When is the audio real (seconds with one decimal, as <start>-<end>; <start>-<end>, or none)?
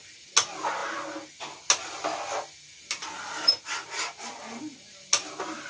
0.0-5.7